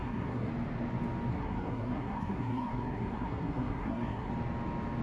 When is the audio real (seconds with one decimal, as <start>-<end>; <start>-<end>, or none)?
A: 0.5-1.3; 4.3-5.0